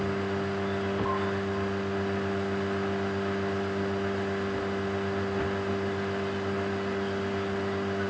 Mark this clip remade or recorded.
recorded